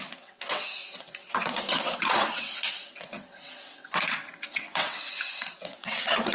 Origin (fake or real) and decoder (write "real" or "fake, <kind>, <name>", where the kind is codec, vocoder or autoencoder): fake, vocoder, WaveNeXt